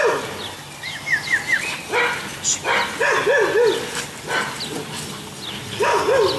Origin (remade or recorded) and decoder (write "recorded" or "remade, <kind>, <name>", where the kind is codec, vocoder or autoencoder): recorded